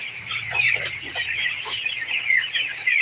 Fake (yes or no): yes